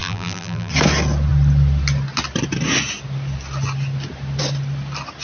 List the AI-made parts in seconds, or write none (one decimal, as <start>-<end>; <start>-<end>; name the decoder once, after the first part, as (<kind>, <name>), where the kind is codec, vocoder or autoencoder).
0.0-0.7 (vocoder, BigVGAN v2)